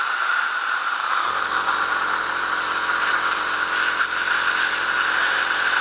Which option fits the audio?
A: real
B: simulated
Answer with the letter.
A